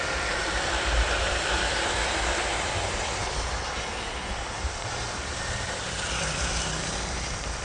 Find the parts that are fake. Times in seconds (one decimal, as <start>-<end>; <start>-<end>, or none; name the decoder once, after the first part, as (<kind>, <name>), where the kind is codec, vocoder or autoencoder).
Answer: 0.0-3.2 (vocoder, BigVGAN v2); 3.9-7.6